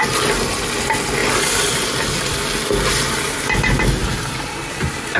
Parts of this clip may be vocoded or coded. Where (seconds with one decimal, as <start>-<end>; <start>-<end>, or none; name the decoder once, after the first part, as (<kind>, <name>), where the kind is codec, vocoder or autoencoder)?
none